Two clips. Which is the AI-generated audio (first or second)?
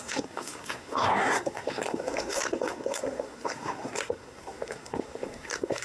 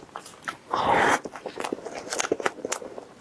first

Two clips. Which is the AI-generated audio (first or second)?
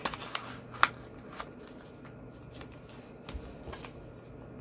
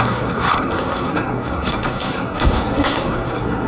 second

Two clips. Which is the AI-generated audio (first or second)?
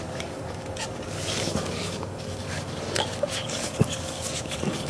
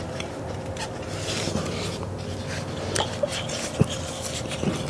first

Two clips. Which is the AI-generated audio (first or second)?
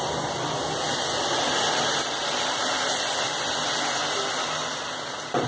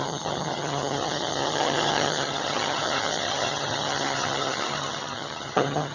second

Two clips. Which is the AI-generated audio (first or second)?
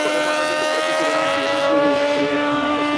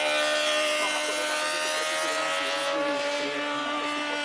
first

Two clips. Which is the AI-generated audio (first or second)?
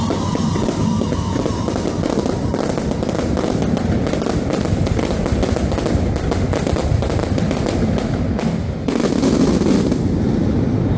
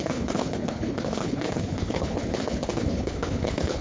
second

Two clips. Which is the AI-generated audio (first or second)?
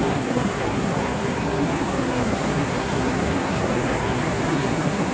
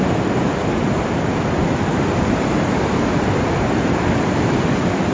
first